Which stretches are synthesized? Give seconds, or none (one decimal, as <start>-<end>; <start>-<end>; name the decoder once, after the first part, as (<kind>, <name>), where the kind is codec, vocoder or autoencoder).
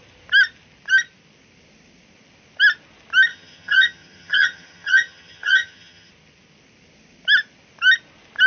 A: 3.3-6.1 (vocoder, HiFi-GAN)